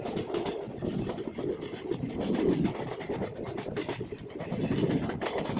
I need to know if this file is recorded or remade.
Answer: recorded